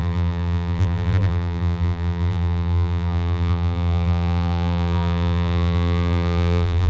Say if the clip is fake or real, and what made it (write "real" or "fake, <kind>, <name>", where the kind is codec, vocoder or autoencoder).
fake, vocoder, BigVGAN v2